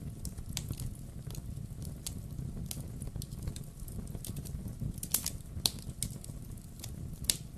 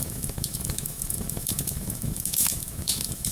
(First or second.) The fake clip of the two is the second